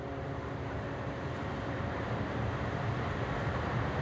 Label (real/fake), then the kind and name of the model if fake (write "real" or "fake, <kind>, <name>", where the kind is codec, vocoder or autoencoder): fake, vocoder, BigVGAN v2